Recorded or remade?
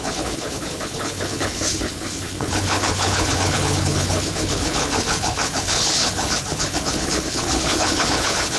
remade